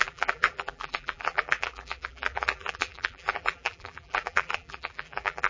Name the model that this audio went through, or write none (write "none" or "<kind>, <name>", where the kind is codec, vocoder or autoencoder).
vocoder, BigVGAN v2